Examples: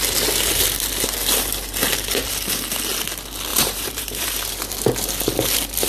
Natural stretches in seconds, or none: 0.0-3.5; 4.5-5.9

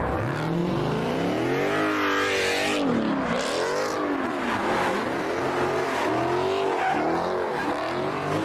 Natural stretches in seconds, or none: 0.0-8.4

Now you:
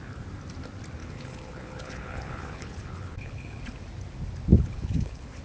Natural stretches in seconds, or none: 0.0-1.0; 3.6-4.5